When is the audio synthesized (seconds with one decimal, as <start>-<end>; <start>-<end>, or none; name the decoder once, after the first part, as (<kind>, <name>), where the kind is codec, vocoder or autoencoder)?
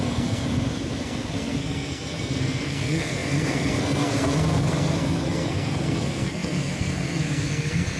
0.0-8.0 (codec, SNAC)